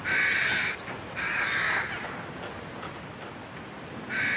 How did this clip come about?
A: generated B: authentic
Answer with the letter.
B